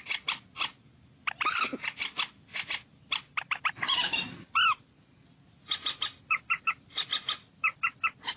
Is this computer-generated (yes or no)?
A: no